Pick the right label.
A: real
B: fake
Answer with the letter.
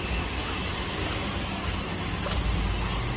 A